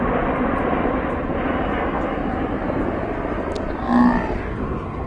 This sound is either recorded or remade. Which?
recorded